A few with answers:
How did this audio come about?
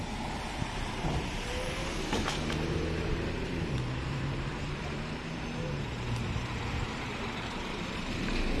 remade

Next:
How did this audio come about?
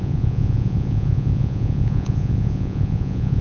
remade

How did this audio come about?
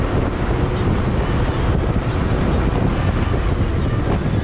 recorded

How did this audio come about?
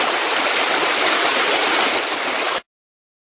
recorded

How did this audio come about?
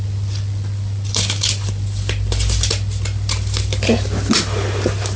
recorded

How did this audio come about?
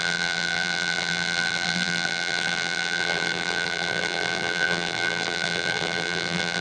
remade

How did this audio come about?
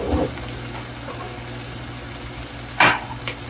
recorded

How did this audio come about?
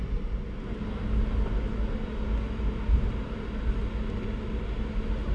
recorded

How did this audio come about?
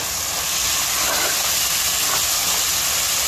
recorded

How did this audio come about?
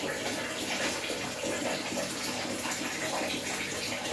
recorded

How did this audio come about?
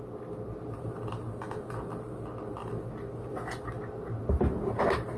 recorded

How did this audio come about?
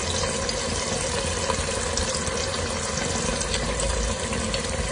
recorded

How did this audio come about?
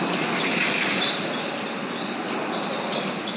recorded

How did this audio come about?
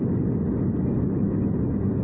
recorded